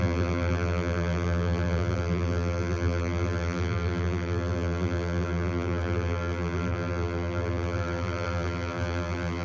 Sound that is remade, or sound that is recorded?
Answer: remade